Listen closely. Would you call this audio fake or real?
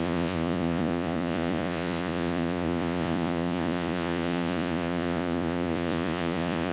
fake